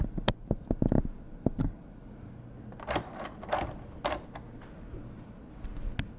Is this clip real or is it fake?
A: real